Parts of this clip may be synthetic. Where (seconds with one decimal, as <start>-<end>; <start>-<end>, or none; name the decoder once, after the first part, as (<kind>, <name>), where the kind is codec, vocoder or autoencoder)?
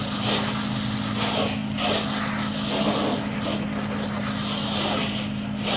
none